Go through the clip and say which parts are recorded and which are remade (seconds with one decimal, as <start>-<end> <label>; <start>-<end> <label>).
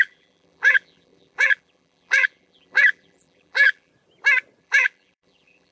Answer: 0.0-3.9 remade; 3.9-4.6 recorded; 4.6-5.7 remade